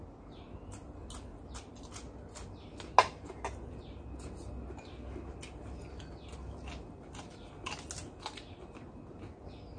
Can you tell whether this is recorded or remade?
recorded